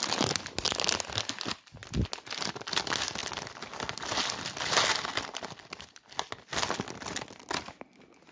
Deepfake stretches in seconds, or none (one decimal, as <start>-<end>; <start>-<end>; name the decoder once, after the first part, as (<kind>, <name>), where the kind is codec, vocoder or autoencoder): none